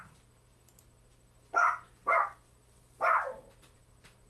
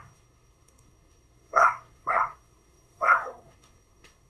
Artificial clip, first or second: second